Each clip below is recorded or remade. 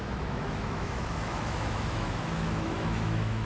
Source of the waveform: remade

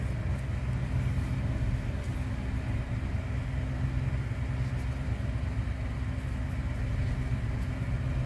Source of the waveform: recorded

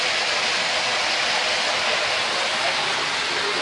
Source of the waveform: recorded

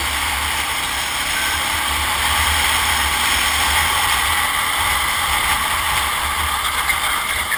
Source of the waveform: recorded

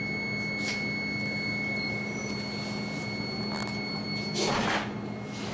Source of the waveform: recorded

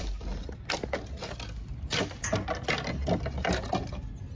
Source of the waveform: recorded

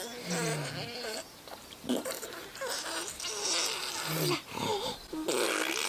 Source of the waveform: recorded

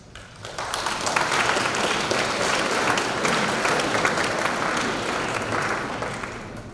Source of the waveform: recorded